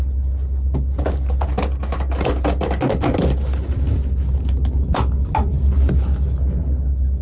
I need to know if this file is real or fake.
real